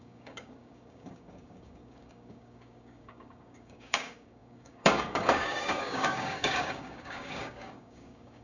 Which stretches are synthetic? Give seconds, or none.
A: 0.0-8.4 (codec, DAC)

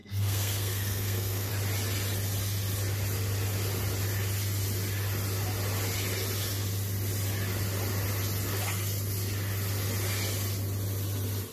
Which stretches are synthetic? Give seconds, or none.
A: 0.0-1.5 (codec, SNAC)

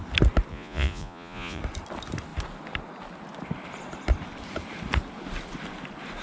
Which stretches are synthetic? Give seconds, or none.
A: 0.5-1.6 (vocoder, Vocos)

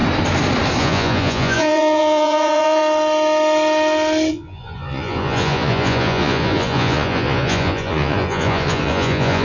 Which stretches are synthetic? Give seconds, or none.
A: 0.8-2.8 (vocoder, Vocos); 4.3-9.4

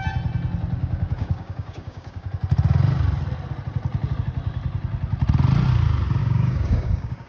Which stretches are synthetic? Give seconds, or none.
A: 0.8-2.3 (codec, DAC); 6.2-7.3

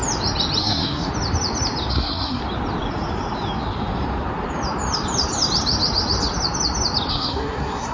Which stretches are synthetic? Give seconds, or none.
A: 0.6-1.1 (codec, SNAC); 1.9-2.4; 7.1-7.9

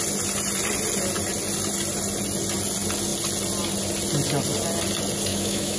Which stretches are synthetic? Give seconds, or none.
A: 5.3-5.8 (autoencoder, DAC-VAE)

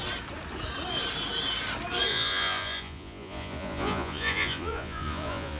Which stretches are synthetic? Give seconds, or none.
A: 2.1-5.6 (vocoder, Vocos)